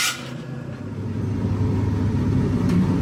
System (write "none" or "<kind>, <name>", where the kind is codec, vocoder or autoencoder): none